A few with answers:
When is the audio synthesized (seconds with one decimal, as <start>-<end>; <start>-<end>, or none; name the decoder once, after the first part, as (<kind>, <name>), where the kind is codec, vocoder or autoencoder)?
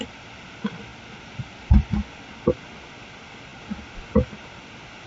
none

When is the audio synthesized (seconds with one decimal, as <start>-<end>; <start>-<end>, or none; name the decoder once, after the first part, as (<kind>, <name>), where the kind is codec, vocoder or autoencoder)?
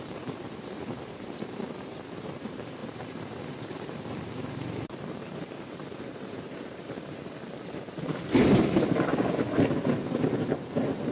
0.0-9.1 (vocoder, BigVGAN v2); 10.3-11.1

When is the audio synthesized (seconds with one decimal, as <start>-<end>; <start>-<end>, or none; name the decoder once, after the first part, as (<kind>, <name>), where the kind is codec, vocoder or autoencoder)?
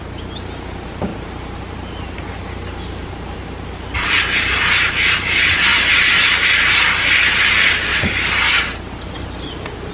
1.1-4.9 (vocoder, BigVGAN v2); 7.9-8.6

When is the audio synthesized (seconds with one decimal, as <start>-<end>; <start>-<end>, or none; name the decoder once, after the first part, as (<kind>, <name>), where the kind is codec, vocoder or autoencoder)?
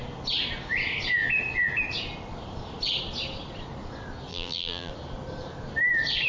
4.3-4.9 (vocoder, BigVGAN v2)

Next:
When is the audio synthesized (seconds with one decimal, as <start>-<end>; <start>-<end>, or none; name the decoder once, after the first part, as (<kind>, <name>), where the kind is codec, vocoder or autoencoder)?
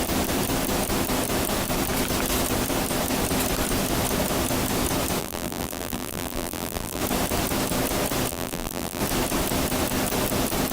5.2-7.0 (vocoder, BigVGAN v2); 8.3-9.0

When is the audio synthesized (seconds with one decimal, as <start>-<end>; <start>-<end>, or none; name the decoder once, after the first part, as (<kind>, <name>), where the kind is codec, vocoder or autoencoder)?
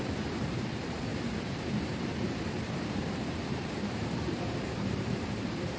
0.0-1.1 (vocoder, BigVGAN v2); 1.7-2.1; 2.8-5.8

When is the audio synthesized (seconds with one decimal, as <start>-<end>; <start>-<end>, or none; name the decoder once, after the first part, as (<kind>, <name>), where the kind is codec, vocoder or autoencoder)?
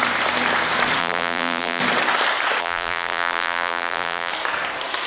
1.0-1.8 (vocoder, BigVGAN v2); 2.6-4.3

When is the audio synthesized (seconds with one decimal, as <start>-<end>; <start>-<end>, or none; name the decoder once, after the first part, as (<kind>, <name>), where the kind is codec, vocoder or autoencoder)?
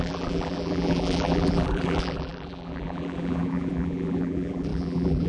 0.0-5.3 (vocoder, BigVGAN v2)